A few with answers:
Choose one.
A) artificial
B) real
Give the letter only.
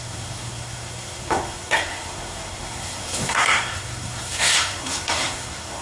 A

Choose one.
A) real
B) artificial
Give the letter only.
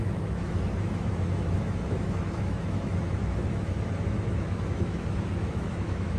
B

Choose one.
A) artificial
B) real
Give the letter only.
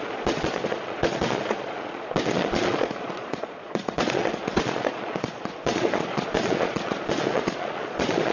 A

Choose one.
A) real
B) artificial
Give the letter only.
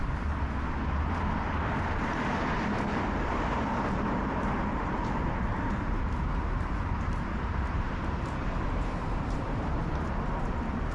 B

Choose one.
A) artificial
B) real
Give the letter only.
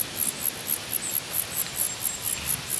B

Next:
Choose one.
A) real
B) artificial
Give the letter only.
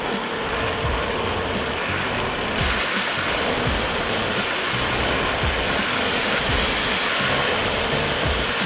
A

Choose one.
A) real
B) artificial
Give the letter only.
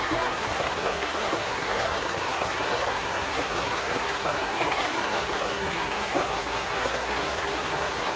B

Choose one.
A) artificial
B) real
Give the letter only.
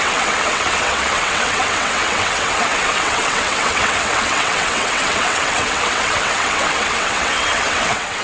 A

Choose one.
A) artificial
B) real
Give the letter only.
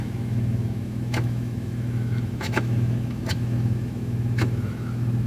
A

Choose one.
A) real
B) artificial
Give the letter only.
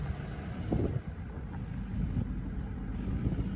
A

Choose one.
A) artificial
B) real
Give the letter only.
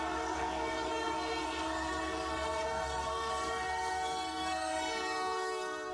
A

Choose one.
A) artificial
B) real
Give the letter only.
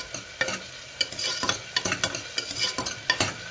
B